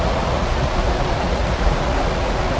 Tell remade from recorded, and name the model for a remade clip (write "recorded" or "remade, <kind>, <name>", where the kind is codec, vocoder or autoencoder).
remade, vocoder, Vocos